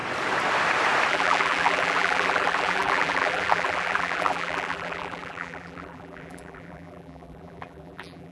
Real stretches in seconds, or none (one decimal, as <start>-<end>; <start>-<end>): 0.0-1.1